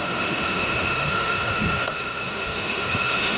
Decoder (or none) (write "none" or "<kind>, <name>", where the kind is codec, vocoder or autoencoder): autoencoder, DAC-VAE